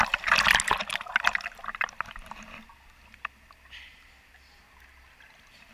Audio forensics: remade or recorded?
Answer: recorded